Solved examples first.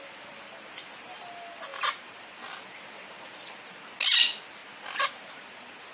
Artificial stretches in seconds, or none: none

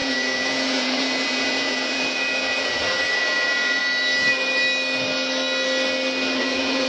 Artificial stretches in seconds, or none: 0.0-3.8 (vocoder, Vocos); 6.4-6.9

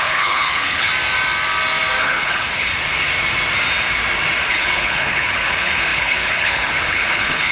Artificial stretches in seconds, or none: 0.0-0.9 (codec, HILCodec); 2.0-2.7; 4.5-7.5

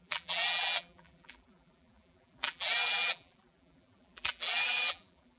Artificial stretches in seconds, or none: 0.0-5.4 (vocoder, BigVGAN v2)

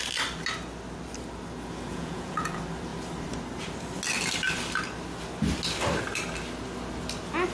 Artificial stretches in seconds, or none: 1.9-2.5 (vocoder, Vocos)

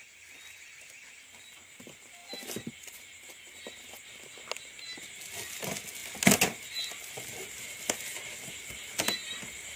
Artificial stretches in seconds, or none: 9.2-9.8 (vocoder, BigVGAN v2)